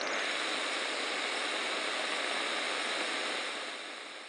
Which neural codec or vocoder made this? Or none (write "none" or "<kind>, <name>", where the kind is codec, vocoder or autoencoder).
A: none